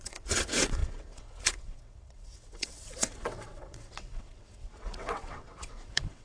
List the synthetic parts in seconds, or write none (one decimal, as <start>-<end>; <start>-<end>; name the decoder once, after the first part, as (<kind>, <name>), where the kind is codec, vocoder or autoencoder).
0.0-6.2 (vocoder, WaveNeXt)